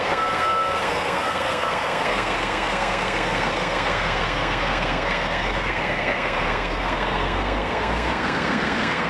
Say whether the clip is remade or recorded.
remade